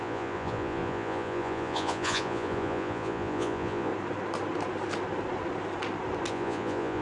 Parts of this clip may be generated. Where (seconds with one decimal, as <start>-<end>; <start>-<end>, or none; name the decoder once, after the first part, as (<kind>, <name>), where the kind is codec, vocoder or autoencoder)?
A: 0.0-3.9 (vocoder, Vocos); 6.3-7.0